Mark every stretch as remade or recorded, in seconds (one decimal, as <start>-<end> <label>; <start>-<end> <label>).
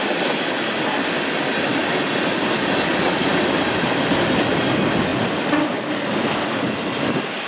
0.0-7.5 recorded